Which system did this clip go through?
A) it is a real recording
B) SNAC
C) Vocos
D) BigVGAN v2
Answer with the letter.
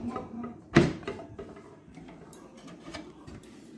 D